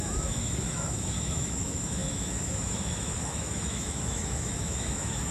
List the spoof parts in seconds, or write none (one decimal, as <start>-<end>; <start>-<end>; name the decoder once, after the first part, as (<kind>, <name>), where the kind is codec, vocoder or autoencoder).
0.0-5.3 (autoencoder, DAC-VAE)